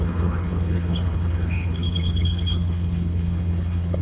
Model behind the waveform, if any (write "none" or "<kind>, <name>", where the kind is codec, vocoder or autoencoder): codec, HILCodec